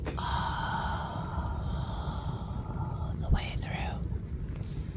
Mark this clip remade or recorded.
recorded